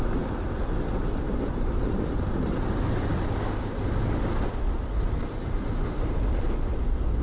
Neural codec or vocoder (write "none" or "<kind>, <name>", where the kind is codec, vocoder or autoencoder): none